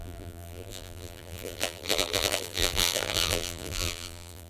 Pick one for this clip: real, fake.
fake